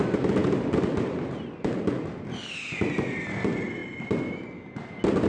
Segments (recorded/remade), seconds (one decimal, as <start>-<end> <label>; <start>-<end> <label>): 0.0-5.3 recorded